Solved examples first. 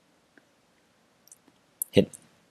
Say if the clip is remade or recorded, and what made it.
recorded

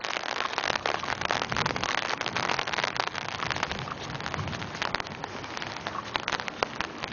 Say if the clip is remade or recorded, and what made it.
recorded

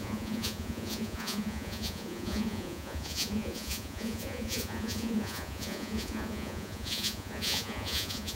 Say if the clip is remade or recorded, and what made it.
remade, vocoder, Vocos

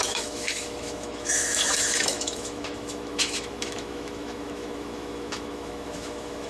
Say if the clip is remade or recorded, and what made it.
remade, autoencoder, DAC-VAE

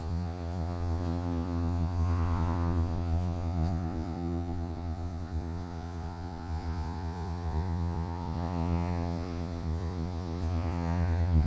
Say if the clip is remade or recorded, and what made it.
remade, vocoder, Vocos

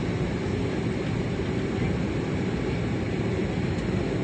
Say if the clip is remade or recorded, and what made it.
recorded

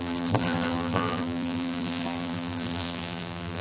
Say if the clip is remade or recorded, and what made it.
remade, vocoder, BigVGAN v2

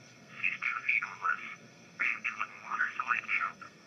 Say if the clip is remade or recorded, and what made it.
remade, codec, SNAC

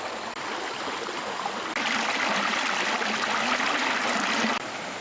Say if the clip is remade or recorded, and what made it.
recorded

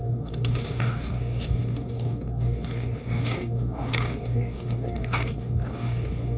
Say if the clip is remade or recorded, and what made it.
remade, codec, DAC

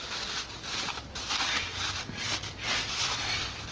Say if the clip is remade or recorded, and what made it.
recorded